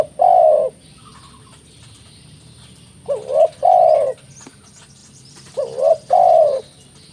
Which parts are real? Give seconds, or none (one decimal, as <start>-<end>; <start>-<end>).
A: 0.0-5.0